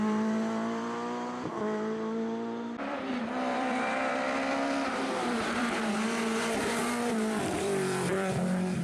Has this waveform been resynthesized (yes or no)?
yes